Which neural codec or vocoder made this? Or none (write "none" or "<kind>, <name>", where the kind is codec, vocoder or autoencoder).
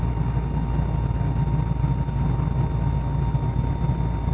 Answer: none